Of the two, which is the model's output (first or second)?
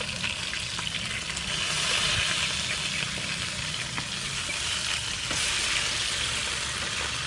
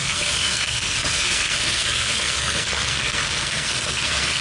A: second